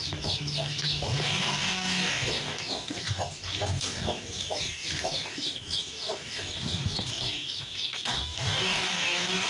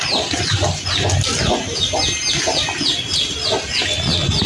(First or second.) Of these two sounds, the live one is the second